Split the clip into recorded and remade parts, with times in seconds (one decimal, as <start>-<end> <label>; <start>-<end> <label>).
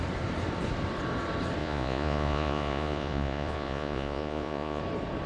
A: 0.0-1.6 recorded; 1.6-4.8 remade; 4.8-5.3 recorded